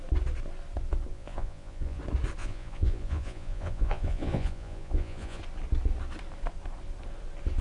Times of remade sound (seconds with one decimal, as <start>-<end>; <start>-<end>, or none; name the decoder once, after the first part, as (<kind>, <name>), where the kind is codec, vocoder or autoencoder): 1.1-2.0 (vocoder, Vocos); 2.4-5.4